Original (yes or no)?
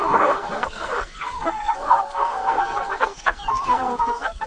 no